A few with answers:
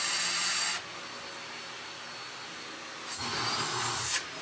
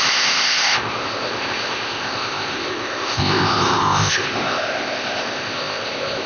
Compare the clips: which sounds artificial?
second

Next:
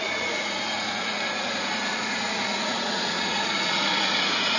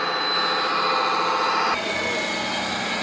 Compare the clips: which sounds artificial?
first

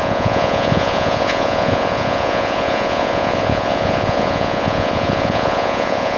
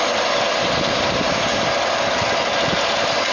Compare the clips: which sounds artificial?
first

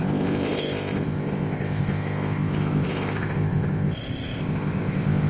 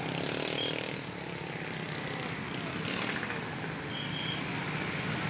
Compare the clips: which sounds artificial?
first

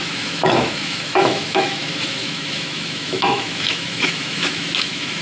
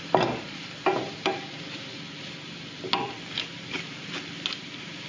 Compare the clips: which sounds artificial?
first